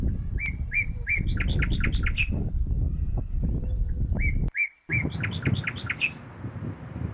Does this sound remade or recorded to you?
recorded